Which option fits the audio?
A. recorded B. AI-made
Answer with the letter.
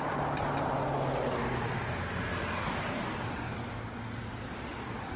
A